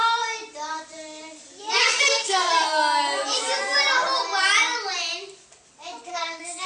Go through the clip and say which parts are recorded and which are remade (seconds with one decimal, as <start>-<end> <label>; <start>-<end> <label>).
0.0-1.8 recorded; 1.8-2.5 remade; 2.5-6.1 recorded; 6.1-6.7 remade